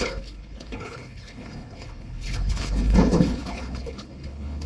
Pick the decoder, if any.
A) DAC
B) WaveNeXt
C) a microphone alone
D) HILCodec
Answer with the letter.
D